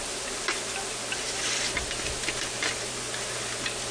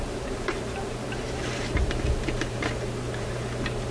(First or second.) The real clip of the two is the first